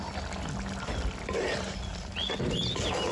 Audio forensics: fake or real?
real